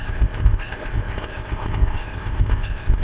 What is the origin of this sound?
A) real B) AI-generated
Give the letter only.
B